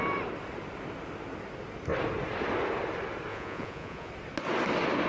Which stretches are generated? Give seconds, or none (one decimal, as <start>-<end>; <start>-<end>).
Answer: 3.3-4.1